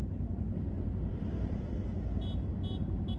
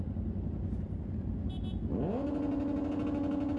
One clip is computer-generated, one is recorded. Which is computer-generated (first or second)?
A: first